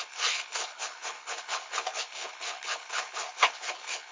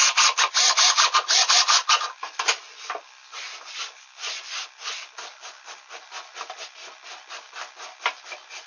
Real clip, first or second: second